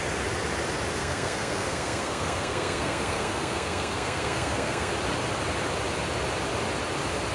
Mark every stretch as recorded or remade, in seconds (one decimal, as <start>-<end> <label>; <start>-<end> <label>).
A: 0.0-1.0 recorded; 1.0-4.9 remade; 4.9-7.3 recorded